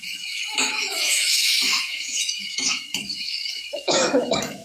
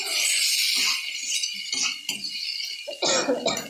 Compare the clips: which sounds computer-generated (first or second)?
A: first